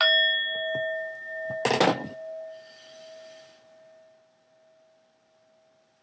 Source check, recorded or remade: recorded